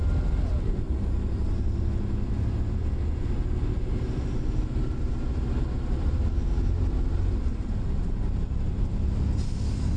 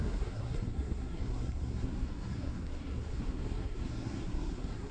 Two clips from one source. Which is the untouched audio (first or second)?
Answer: first